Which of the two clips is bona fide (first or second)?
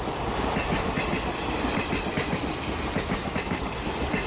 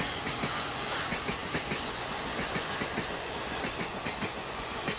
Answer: first